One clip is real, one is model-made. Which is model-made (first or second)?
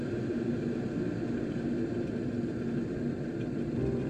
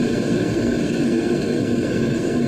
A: second